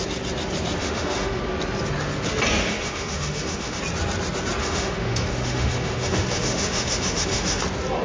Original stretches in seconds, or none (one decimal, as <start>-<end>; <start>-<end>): 0.0-0.8; 1.4-2.6; 3.8-4.6; 7.6-8.0